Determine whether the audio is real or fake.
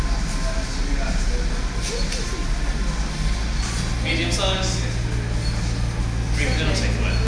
real